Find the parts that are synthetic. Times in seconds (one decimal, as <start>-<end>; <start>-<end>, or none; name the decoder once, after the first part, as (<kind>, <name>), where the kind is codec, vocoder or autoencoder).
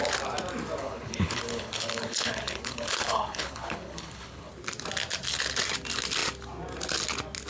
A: 0.8-4.5 (codec, HILCodec)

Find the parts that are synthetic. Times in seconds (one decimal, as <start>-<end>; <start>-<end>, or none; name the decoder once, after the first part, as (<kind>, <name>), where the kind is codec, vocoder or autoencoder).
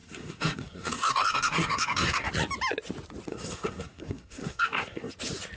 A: 0.0-2.3 (codec, SNAC); 3.3-5.1